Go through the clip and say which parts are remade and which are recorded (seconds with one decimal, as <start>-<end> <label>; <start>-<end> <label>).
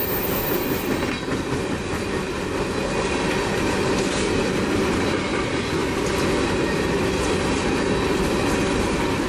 0.0-9.3 recorded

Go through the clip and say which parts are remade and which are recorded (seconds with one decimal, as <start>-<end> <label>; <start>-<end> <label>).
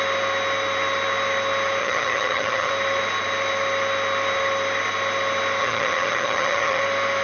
0.0-1.8 recorded; 1.8-2.7 remade; 2.7-5.6 recorded; 5.6-6.8 remade; 6.8-7.2 recorded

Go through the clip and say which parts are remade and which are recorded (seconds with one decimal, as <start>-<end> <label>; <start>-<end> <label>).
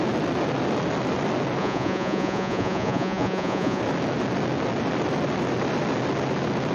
0.0-1.6 recorded; 1.6-3.8 remade; 3.8-6.7 recorded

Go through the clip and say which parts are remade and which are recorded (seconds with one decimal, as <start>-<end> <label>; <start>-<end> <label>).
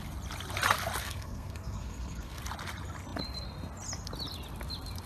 0.0-1.0 recorded; 1.0-2.4 remade; 2.4-5.1 recorded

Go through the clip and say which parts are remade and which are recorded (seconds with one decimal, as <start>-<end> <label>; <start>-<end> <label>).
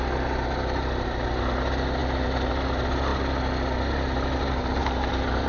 0.0-5.5 recorded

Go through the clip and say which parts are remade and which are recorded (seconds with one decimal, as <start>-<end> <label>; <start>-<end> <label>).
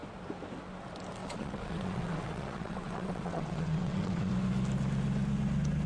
0.0-1.2 recorded; 1.2-4.3 remade; 4.3-5.9 recorded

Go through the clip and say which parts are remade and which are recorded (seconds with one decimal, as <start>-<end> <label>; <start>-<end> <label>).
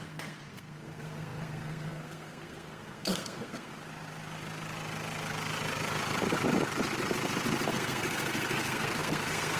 0.0-3.7 remade; 3.7-7.7 recorded; 7.7-9.6 remade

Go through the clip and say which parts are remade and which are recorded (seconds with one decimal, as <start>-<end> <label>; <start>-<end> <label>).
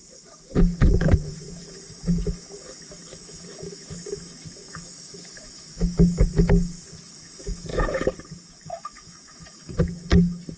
0.0-10.6 remade